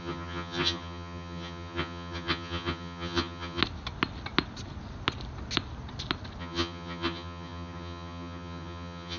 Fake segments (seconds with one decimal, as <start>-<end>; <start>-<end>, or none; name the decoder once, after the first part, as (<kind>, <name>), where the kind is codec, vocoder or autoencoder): 0.0-3.6 (vocoder, HiFi-GAN); 6.4-9.2